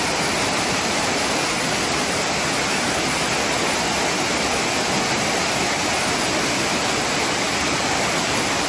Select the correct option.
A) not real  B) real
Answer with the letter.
B